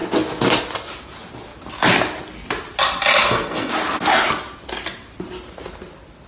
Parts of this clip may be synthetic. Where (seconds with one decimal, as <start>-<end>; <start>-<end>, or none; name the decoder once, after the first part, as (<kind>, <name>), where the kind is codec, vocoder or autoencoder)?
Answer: 3.2-3.7 (codec, SNAC)